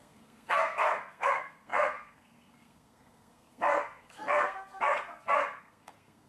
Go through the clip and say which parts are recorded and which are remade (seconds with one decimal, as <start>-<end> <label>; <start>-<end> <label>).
0.0-6.3 remade